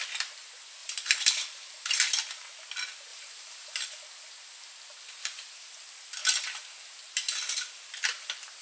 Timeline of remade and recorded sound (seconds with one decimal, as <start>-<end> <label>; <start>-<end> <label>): 0.0-0.8 recorded; 0.8-1.9 remade; 1.9-3.1 recorded; 3.1-3.8 remade; 3.8-8.6 recorded